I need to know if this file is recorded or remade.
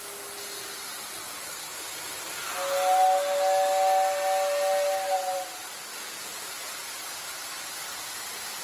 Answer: recorded